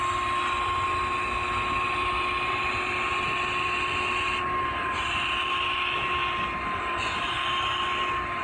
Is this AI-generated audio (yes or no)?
no